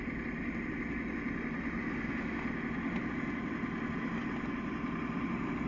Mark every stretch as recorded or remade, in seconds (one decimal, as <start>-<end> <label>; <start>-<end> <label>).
0.0-5.7 recorded